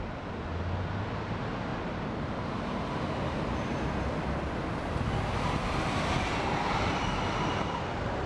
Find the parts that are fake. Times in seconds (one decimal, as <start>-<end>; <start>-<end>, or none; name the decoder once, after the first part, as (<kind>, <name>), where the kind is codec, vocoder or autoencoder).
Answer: 1.7-2.8 (vocoder, BigVGAN v2)